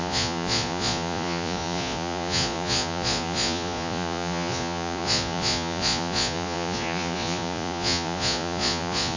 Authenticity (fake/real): fake